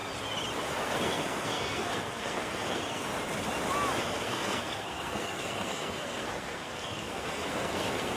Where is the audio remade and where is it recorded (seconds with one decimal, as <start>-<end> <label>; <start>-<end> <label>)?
0.0-0.7 recorded; 0.7-3.1 remade; 3.1-4.0 recorded; 4.0-8.2 remade

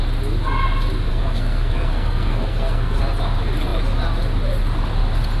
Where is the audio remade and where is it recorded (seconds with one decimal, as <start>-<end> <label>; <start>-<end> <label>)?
0.0-1.1 recorded; 1.1-3.0 remade; 3.0-5.4 recorded

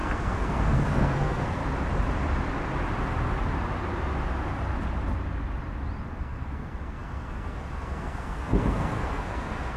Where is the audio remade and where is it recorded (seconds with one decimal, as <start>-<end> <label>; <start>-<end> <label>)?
0.0-1.6 remade; 1.6-6.2 recorded; 6.2-9.8 remade

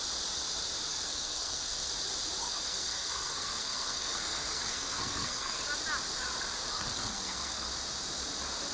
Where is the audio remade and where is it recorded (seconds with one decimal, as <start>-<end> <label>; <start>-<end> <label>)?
0.0-0.9 recorded; 0.9-1.9 remade; 1.9-2.4 recorded; 2.4-5.6 remade; 5.6-6.7 recorded; 6.7-7.7 remade; 7.7-8.7 recorded